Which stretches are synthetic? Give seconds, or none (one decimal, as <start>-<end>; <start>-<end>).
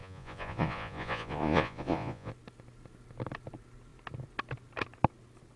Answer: 0.0-2.3